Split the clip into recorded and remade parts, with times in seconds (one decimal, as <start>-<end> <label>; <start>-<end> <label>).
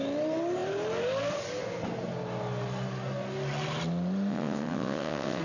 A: 0.0-4.3 recorded; 4.3-5.4 remade